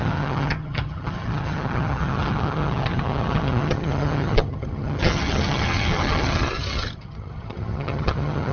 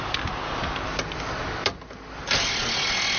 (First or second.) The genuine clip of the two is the second